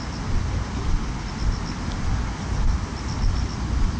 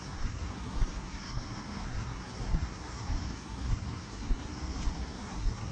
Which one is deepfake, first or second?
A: second